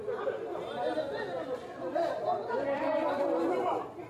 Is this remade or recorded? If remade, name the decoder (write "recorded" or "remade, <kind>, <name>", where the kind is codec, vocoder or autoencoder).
recorded